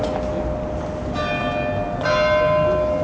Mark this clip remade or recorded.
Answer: recorded